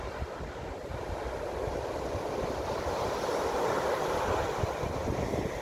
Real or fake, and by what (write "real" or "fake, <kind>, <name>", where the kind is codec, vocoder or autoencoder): real